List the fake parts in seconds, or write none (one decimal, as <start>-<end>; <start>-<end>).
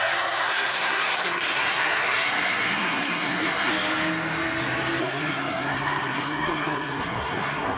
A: 0.0-3.7; 5.0-7.8